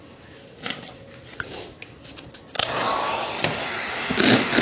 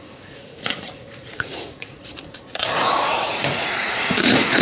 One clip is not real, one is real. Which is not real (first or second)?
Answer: second